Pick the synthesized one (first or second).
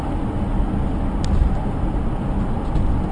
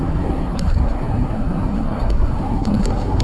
second